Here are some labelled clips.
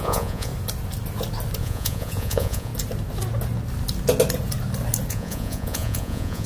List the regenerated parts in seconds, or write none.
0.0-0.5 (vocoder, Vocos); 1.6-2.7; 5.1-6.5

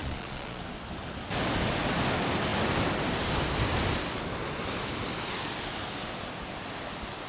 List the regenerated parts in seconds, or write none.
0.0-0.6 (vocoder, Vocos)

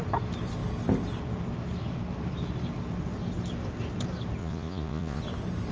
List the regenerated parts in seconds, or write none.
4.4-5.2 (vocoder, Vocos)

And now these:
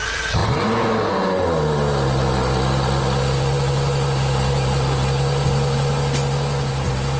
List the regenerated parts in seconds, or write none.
none

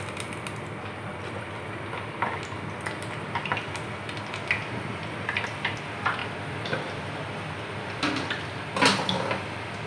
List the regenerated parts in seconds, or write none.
none

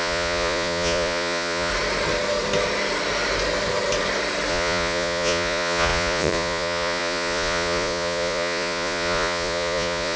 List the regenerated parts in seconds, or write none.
0.0-1.7 (vocoder, Vocos); 4.5-10.2

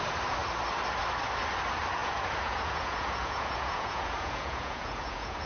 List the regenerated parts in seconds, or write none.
2.0-5.5 (vocoder, Vocos)